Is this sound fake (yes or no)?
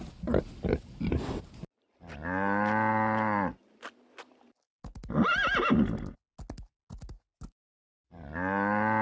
no